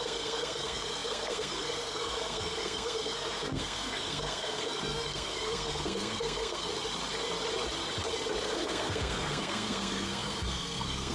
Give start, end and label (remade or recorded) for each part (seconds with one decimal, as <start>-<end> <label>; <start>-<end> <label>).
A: 0.0-6.7 remade; 6.7-8.4 recorded; 8.4-11.1 remade